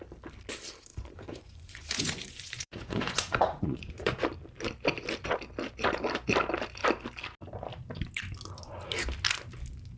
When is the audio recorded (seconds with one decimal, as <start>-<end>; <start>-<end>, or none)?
0.0-0.9; 4.2-10.0

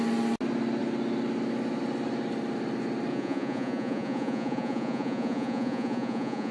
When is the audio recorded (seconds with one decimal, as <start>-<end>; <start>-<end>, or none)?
0.0-3.1